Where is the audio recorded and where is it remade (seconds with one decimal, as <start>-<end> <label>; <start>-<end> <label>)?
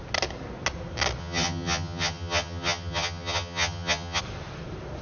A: 0.0-1.2 recorded; 1.2-4.2 remade; 4.2-5.0 recorded